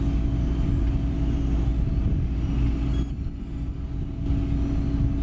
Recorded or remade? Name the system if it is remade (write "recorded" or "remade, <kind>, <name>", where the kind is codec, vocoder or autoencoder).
recorded